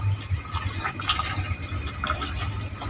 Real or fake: real